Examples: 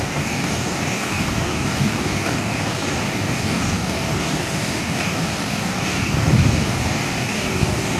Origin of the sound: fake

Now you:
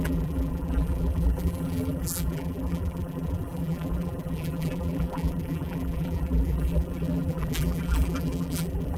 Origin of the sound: fake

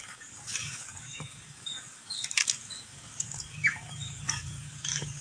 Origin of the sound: fake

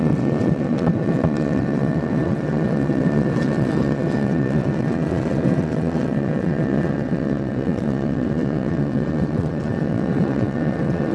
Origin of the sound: fake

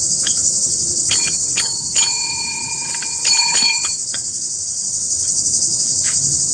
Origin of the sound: fake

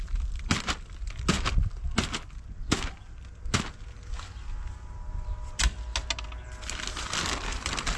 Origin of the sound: real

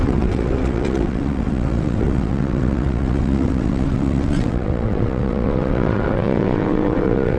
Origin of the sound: fake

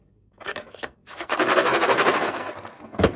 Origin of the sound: fake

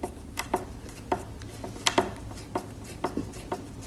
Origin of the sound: real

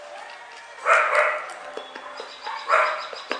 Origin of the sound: real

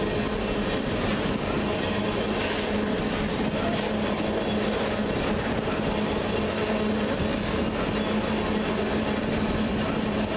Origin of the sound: real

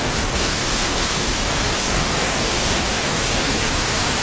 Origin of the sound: fake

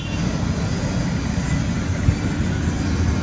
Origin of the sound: real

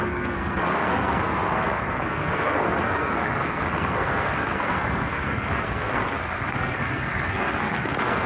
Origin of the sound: fake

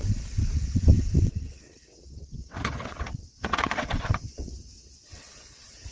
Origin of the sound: fake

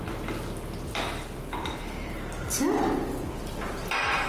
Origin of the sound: real